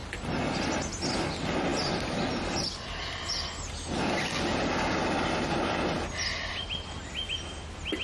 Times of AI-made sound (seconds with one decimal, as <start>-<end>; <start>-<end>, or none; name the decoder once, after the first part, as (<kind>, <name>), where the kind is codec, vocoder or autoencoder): none